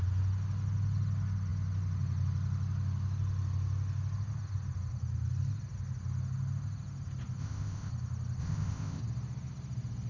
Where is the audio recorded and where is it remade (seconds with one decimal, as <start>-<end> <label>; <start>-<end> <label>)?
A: 0.0-7.4 recorded; 7.4-7.9 remade; 7.9-8.4 recorded; 8.4-9.0 remade; 9.0-10.1 recorded